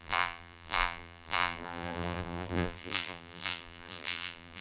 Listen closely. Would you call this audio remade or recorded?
remade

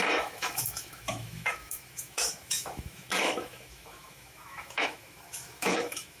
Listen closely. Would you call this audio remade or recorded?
remade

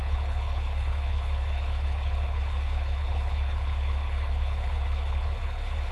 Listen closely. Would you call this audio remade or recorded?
remade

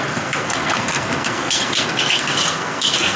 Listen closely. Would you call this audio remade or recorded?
remade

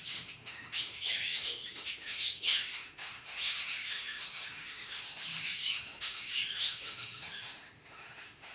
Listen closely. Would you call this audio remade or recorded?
remade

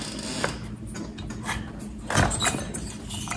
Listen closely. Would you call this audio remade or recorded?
recorded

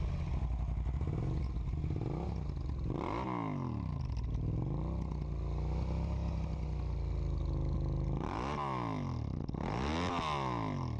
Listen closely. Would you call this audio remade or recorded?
recorded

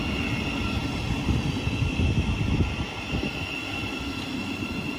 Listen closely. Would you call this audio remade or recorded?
recorded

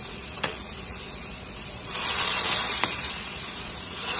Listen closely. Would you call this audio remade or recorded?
remade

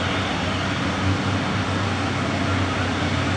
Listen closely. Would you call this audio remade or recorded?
recorded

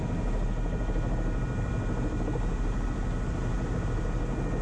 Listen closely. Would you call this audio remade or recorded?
recorded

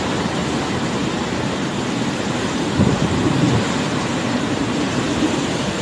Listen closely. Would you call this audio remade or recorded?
remade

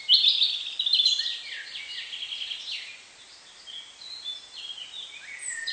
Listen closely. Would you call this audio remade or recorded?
recorded